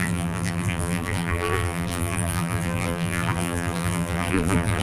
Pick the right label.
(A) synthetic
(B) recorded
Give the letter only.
A